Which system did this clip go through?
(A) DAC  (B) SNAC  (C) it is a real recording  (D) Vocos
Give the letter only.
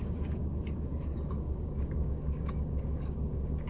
A